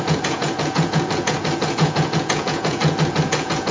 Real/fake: fake